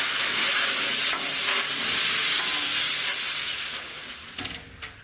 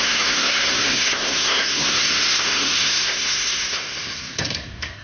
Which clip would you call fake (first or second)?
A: second